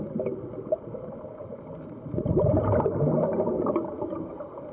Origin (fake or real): real